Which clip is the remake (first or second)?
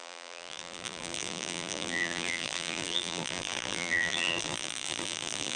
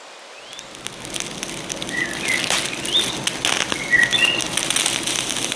first